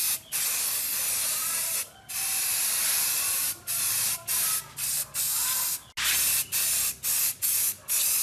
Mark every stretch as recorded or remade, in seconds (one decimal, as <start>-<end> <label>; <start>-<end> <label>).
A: 0.0-1.4 recorded; 1.4-2.1 remade; 2.1-2.8 recorded; 2.8-4.1 remade; 4.1-8.2 recorded

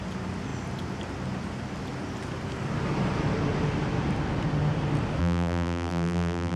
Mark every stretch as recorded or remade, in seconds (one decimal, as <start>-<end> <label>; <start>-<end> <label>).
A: 0.0-5.2 recorded; 5.2-6.6 remade